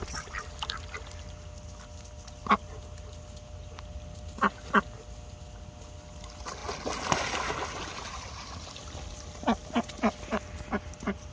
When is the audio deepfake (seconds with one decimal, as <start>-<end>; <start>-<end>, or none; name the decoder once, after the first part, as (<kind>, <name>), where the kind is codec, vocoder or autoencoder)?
none